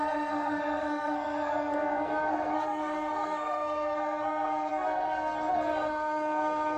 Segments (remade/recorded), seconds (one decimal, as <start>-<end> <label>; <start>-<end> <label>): 0.0-6.8 remade